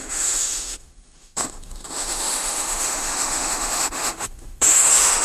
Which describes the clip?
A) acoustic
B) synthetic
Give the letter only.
B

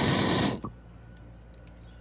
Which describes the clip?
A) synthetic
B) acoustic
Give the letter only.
B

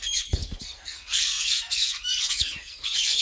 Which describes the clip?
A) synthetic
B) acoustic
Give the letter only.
A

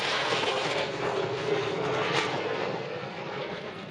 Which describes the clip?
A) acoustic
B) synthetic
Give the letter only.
B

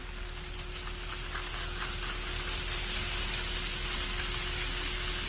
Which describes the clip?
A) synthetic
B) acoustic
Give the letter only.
B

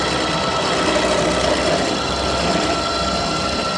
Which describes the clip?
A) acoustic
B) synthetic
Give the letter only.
A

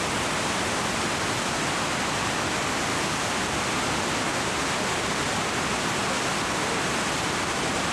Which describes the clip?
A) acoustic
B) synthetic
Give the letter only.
A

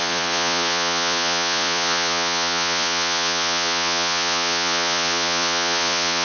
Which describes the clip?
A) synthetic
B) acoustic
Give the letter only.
A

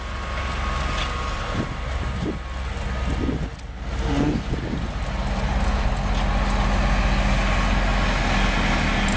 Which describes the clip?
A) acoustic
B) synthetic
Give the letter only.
A